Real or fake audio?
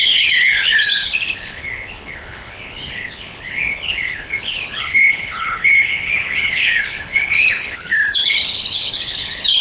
fake